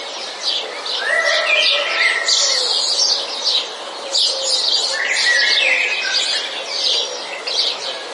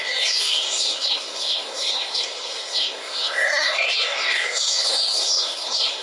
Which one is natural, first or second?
first